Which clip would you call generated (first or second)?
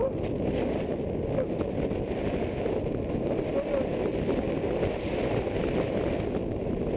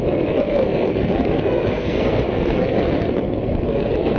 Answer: second